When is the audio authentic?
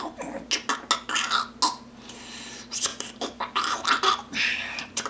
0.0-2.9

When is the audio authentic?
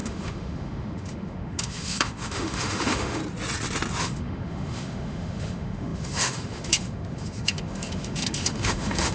3.2-4.0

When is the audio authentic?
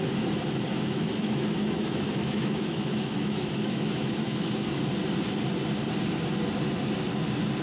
0.0-0.7; 4.8-7.6